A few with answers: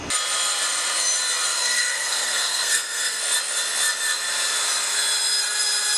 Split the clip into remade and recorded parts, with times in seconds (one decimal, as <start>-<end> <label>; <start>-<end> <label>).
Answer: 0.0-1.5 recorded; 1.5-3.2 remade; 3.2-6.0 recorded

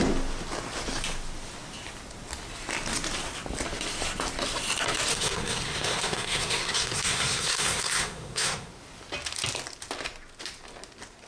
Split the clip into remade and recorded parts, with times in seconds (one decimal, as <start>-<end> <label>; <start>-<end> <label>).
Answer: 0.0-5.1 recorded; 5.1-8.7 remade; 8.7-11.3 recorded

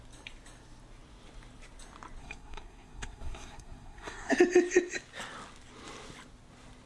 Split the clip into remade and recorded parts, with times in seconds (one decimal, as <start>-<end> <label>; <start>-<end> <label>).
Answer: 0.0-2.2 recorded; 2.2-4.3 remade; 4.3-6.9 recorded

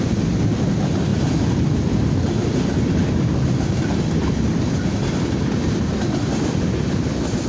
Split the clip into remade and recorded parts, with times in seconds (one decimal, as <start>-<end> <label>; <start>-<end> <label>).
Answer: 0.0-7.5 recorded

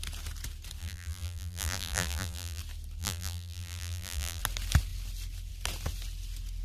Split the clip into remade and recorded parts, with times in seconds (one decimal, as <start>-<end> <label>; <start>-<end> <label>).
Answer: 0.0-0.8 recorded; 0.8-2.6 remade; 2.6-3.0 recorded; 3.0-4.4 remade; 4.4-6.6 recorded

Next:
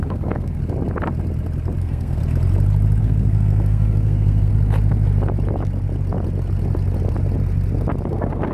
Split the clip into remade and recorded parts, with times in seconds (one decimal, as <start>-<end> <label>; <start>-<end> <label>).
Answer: 0.0-0.6 remade; 0.6-1.8 recorded; 1.8-2.2 remade; 2.2-3.0 recorded; 3.0-4.5 remade; 4.5-8.1 recorded; 8.1-8.5 remade